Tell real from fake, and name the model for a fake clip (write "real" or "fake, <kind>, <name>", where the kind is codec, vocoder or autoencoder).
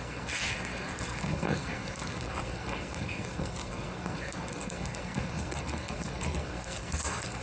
fake, codec, SNAC